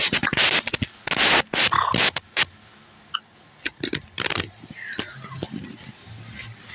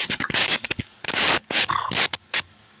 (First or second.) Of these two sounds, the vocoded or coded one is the second